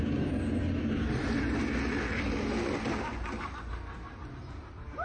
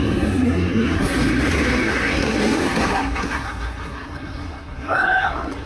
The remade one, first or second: second